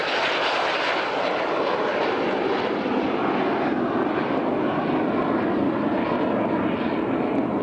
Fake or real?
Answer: real